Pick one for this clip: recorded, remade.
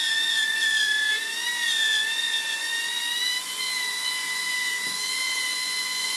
remade